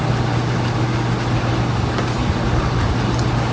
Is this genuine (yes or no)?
yes